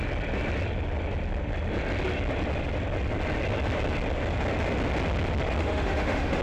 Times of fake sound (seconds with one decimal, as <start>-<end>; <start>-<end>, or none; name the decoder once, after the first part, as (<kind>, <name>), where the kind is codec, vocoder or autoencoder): 5.6-6.4 (autoencoder, DAC-VAE)